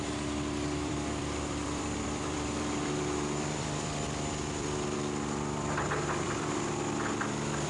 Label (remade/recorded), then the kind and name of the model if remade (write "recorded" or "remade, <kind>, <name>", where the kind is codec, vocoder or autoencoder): remade, vocoder, BigVGAN v2